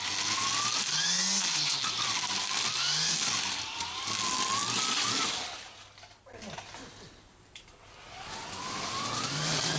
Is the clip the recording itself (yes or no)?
yes